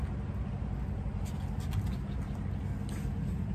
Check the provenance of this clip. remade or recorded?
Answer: recorded